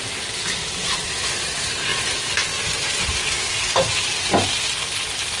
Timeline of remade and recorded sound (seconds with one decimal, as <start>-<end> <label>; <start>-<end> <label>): 0.0-5.4 recorded